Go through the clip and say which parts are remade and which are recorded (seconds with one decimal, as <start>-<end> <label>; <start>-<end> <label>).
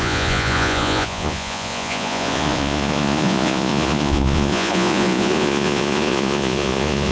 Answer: 0.0-7.1 remade